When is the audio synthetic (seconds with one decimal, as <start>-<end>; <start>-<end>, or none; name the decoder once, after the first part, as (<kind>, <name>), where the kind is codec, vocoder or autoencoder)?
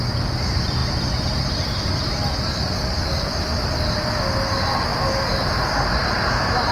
none